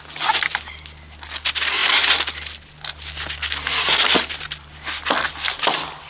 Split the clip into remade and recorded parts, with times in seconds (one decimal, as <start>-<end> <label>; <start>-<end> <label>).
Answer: 0.0-6.1 recorded